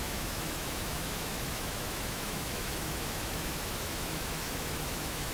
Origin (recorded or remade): remade